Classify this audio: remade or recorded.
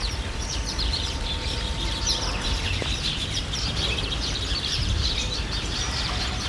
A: remade